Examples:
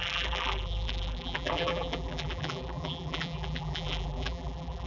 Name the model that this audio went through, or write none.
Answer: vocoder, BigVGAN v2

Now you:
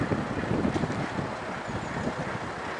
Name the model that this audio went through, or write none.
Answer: none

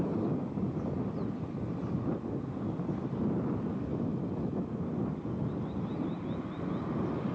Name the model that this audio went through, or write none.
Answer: none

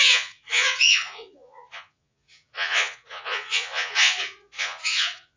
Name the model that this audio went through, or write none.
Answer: vocoder, Vocos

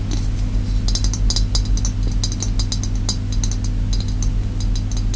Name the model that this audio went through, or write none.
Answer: none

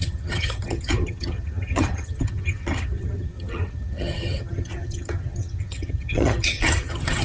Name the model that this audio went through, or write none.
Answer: vocoder, HiFi-GAN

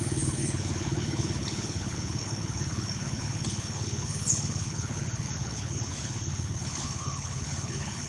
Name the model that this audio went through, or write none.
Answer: codec, HILCodec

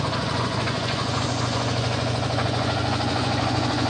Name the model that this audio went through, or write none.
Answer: vocoder, Vocos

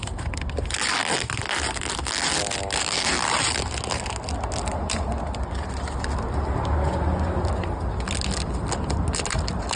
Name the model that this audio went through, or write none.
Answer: none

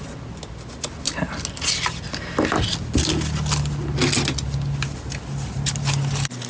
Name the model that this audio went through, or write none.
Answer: none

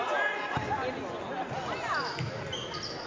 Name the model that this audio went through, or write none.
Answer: none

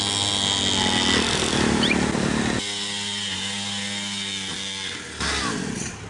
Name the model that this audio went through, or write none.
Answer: none